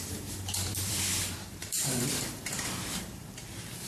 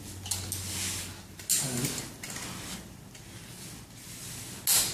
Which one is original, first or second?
second